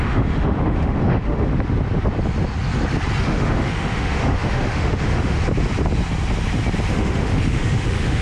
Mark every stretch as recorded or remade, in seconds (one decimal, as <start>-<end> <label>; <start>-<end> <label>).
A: 0.0-1.5 remade; 1.5-3.2 recorded; 3.2-5.4 remade; 5.4-6.9 recorded; 6.9-8.2 remade